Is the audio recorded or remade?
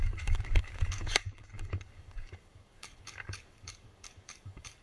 remade